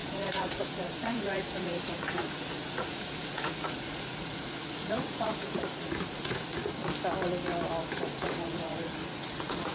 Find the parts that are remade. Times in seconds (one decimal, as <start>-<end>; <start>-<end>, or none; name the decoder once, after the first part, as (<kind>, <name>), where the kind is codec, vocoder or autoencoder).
0.0-6.8 (vocoder, Vocos); 7.8-9.7